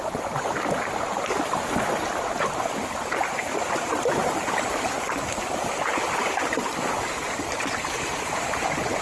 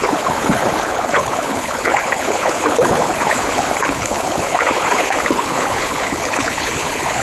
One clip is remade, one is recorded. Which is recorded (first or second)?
first